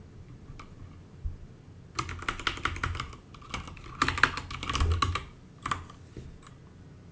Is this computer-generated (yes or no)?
no